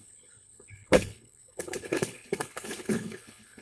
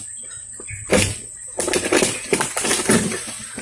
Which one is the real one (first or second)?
second